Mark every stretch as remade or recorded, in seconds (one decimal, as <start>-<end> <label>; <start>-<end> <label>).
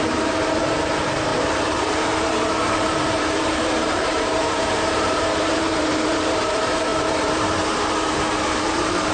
0.0-9.1 remade